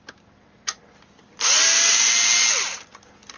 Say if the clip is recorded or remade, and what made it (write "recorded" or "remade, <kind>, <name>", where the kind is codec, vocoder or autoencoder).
recorded